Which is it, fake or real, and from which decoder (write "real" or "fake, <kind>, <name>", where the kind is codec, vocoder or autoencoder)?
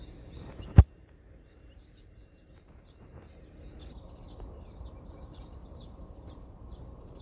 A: fake, vocoder, BigVGAN v2